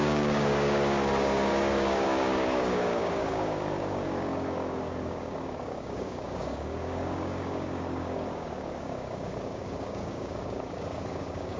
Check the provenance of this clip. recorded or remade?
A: remade